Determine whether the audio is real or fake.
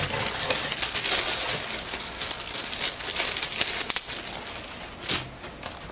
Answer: real